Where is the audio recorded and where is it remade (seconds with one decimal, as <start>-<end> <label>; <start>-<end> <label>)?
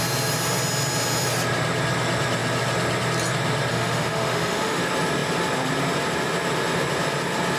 0.0-3.7 recorded; 3.7-4.8 remade; 4.8-7.6 recorded